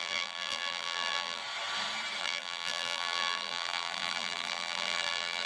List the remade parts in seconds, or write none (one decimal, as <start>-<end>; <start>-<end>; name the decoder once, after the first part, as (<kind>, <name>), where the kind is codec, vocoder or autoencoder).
0.0-1.4 (vocoder, BigVGAN v2); 2.2-5.5